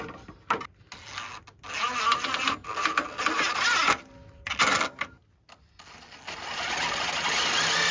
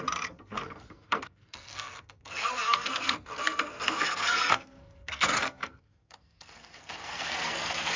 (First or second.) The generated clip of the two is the second